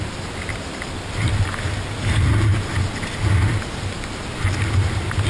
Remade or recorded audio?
recorded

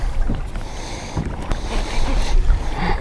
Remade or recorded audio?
recorded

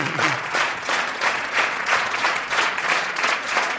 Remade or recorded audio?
remade